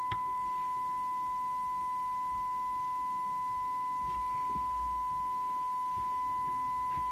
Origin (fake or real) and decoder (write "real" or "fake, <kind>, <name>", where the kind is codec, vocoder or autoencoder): real